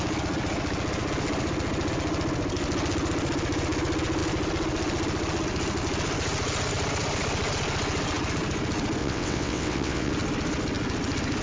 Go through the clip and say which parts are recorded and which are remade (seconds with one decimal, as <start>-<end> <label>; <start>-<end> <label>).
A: 0.0-9.0 recorded; 9.0-10.1 remade; 10.1-11.4 recorded